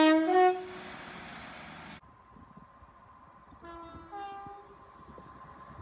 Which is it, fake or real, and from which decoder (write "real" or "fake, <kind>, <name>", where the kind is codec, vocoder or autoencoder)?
real